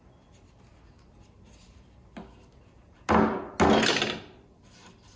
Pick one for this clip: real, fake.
real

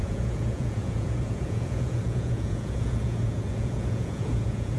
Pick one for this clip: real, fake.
fake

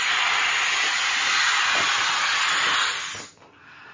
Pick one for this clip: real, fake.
real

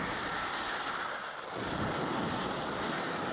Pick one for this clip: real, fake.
real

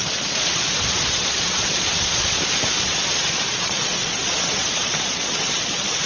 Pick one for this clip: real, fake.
fake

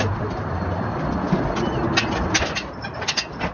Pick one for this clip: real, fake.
real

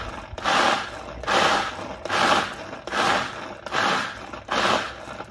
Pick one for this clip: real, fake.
real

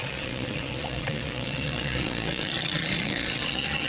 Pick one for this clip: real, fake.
fake